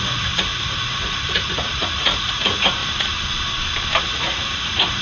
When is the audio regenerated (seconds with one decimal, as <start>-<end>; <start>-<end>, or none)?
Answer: 0.0-2.8; 4.0-5.0